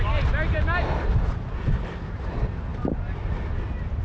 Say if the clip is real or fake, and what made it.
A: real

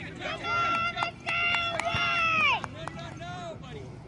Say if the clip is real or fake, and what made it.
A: real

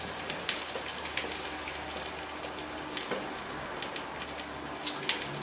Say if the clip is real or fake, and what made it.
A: real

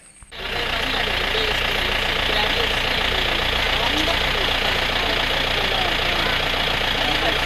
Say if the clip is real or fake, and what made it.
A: real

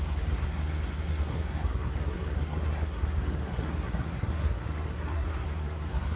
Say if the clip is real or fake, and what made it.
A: fake, codec, SNAC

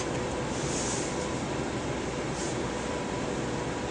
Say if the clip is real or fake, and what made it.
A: real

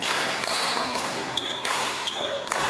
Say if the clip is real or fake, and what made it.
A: fake, codec, SNAC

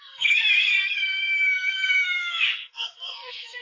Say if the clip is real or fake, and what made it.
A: fake, codec, SNAC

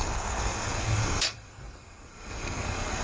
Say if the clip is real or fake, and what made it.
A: fake, codec, SNAC